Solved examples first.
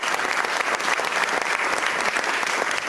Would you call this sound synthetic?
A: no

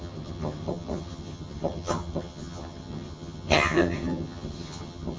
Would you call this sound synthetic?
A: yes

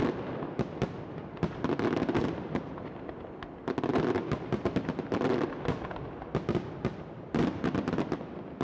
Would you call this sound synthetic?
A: no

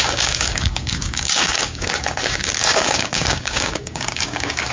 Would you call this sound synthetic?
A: yes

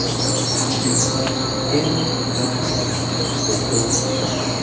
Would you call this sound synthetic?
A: no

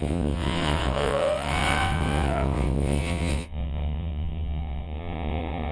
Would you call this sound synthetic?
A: yes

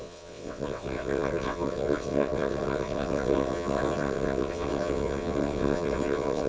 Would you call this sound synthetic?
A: yes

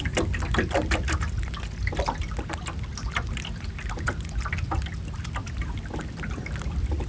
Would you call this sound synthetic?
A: no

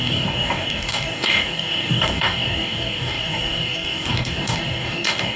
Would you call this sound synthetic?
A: yes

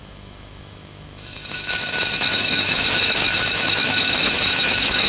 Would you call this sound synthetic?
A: yes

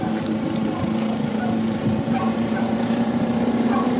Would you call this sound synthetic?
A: yes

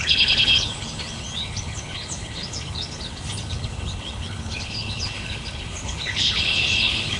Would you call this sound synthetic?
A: yes